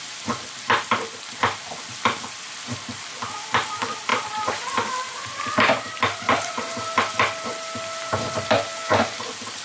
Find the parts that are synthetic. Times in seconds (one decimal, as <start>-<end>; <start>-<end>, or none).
4.1-7.5